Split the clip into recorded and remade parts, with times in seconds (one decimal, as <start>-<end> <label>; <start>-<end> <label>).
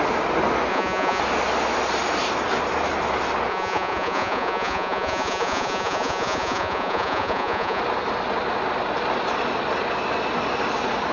0.0-0.7 recorded; 0.7-1.2 remade; 1.2-3.5 recorded; 3.5-7.8 remade; 7.8-11.1 recorded